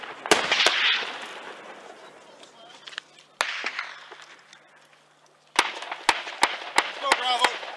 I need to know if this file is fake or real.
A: real